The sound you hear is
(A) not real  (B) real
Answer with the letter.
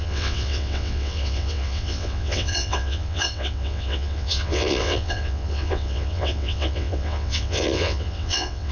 A